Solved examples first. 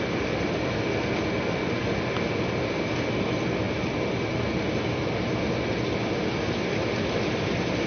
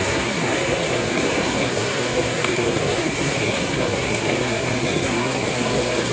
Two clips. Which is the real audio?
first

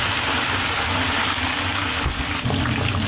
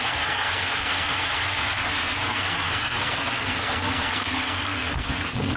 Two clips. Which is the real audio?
first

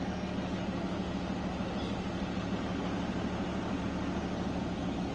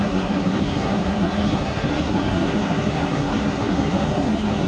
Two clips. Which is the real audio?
first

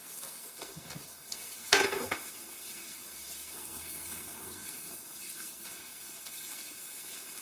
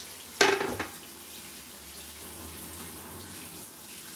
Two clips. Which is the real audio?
second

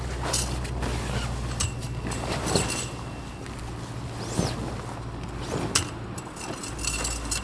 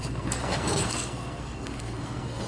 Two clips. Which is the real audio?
first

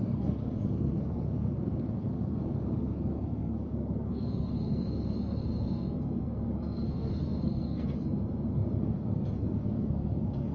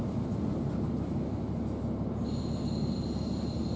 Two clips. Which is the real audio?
second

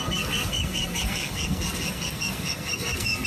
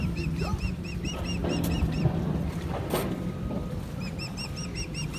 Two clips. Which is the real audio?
second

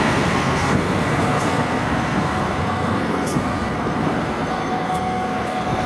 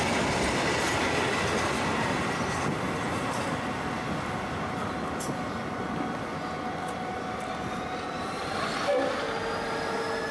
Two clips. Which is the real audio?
second